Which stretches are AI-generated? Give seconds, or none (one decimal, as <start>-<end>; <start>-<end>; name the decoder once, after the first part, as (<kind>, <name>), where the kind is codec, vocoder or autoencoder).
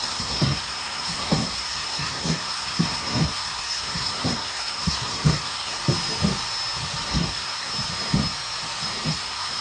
0.0-5.8 (codec, SNAC); 7.1-7.7; 9.1-9.6